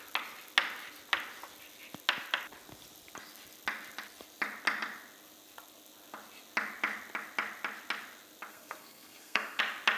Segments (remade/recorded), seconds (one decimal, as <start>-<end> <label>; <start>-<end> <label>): 0.0-8.5 recorded; 8.5-9.6 remade; 9.6-10.0 recorded